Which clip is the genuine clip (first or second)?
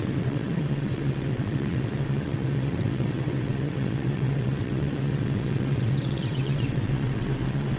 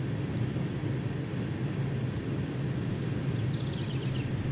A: second